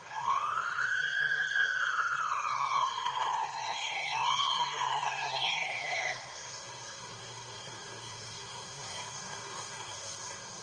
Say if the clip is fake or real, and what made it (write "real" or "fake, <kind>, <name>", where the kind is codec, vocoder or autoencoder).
fake, codec, SNAC